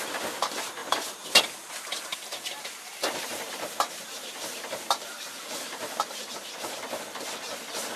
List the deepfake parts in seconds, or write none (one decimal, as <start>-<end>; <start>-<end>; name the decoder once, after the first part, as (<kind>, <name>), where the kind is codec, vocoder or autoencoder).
0.8-1.4 (vocoder, BigVGAN v2); 2.1-6.3